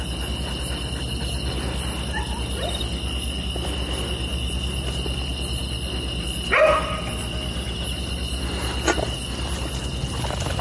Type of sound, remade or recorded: recorded